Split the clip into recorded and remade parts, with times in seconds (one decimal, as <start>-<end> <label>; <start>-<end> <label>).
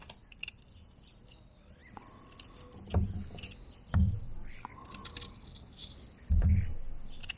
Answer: 0.0-7.4 recorded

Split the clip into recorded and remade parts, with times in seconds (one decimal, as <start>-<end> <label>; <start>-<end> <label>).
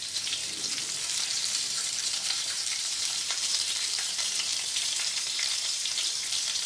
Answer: 0.0-0.4 remade; 0.4-1.0 recorded; 1.0-6.7 remade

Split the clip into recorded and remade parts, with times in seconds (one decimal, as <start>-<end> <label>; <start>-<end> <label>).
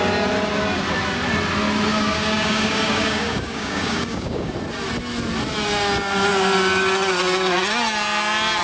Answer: 0.0-1.9 recorded; 1.9-4.5 remade; 4.5-8.6 recorded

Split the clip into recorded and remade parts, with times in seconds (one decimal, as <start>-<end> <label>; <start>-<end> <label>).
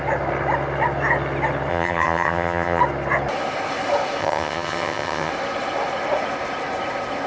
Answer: 0.0-1.7 recorded; 1.7-2.8 remade; 2.8-4.2 recorded; 4.2-5.3 remade; 5.3-7.3 recorded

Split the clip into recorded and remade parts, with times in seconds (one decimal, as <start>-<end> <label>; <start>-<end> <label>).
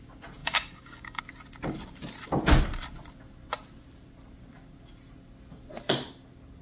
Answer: 0.0-0.4 recorded; 0.4-1.2 remade; 1.2-6.6 recorded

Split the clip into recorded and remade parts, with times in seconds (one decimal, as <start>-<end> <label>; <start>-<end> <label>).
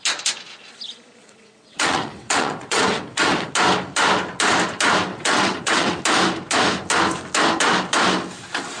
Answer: 0.0-1.2 recorded; 1.2-3.5 remade; 3.5-5.1 recorded; 5.1-6.0 remade; 6.0-8.8 recorded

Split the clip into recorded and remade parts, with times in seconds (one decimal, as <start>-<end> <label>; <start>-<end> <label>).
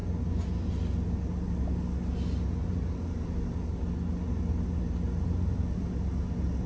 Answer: 0.0-6.7 recorded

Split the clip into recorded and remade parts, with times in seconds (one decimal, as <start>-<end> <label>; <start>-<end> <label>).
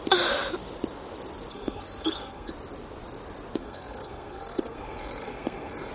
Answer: 0.0-1.5 recorded; 1.5-2.5 remade; 2.5-3.6 recorded; 3.6-5.9 remade